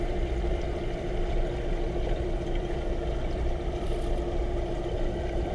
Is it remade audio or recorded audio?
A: remade